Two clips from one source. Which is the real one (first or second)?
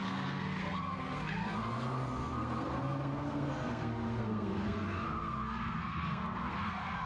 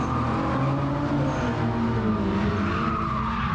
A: second